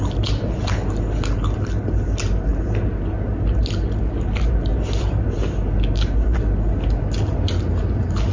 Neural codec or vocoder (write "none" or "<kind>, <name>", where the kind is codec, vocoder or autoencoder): none